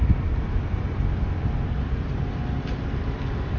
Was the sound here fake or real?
real